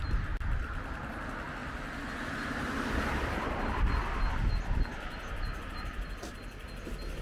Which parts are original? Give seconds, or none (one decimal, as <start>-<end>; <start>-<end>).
0.0-7.2